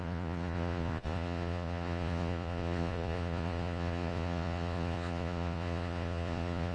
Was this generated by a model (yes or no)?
yes